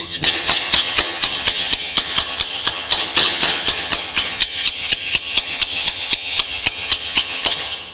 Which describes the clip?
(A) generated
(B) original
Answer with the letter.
A